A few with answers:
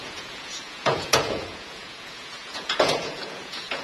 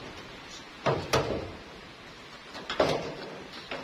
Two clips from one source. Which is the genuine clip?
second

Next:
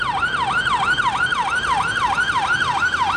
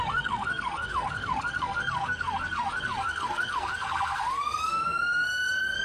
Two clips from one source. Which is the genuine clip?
first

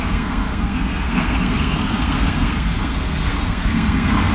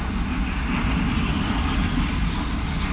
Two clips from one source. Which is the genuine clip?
second